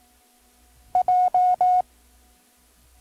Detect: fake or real real